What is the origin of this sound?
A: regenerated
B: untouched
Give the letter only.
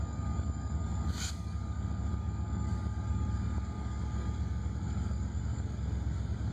A